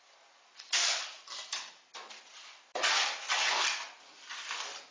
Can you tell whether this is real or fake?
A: real